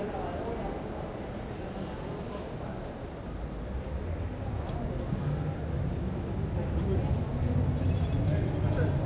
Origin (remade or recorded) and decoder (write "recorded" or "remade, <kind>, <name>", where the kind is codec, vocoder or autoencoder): recorded